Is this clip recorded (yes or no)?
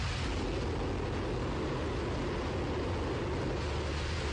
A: yes